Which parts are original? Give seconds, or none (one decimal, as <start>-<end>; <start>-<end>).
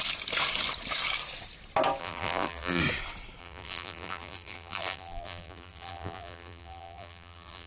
0.0-2.0; 2.8-3.4